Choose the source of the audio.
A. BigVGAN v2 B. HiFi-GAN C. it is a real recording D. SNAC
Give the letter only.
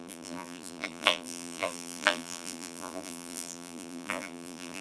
A